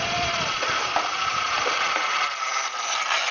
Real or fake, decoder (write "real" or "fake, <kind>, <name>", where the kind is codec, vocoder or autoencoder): real